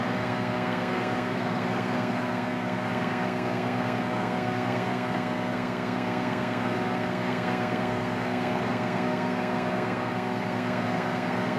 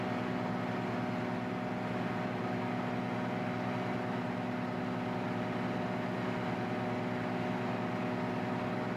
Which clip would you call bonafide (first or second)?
second